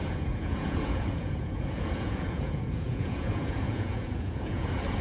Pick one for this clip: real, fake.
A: fake